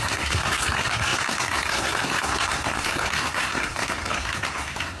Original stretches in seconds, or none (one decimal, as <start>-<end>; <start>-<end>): none

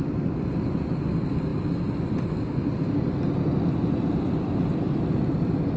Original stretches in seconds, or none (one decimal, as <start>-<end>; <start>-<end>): 0.0-5.8

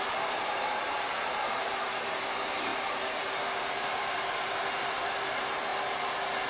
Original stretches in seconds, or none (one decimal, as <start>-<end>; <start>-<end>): 5.7-6.5

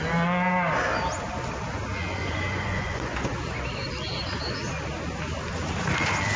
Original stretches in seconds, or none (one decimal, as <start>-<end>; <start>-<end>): 0.0-2.2; 3.3-6.4